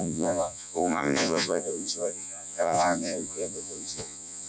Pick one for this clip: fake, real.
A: fake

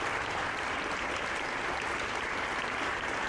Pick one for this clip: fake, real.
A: real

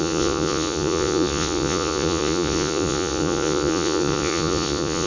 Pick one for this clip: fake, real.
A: fake